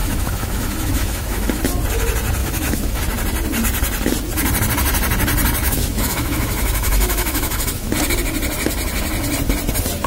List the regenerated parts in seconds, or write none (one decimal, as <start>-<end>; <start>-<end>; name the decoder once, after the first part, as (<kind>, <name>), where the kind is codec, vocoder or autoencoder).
0.0-1.6 (autoencoder, DAC-VAE); 2.4-3.0; 5.6-7.9